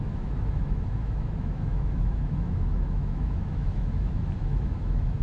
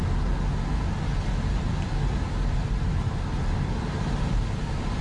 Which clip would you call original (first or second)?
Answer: second